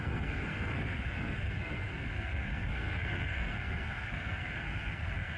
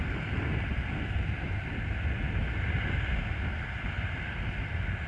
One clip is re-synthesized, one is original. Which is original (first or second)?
second